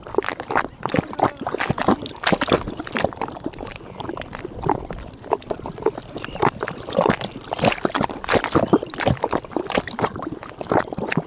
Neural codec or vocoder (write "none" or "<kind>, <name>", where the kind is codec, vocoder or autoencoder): none